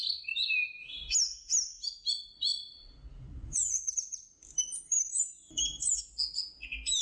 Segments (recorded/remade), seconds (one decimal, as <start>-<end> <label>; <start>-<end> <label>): 0.0-2.5 recorded; 2.5-6.0 remade; 6.0-7.0 recorded